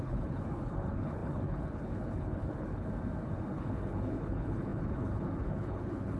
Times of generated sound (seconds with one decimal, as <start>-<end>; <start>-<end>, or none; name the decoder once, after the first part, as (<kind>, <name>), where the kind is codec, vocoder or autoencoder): 0.0-2.9 (codec, HILCodec); 3.5-6.2